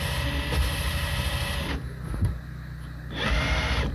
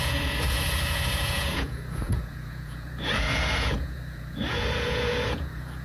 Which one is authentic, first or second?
first